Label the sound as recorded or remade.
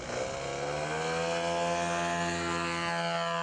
recorded